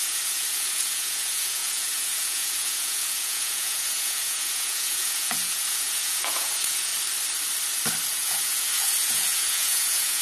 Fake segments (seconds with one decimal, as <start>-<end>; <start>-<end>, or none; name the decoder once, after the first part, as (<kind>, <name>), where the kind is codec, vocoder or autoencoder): 0.0-6.9 (vocoder, Vocos); 8.1-10.2